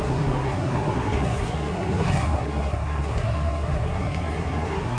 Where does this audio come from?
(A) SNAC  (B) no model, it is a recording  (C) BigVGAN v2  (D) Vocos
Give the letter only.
A